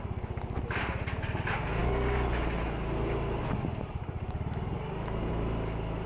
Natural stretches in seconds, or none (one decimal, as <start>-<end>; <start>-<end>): 0.0-6.1